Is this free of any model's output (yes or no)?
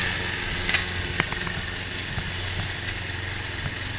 yes